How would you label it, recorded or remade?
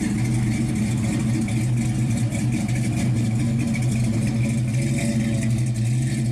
recorded